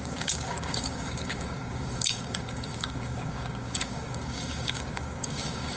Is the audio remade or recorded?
remade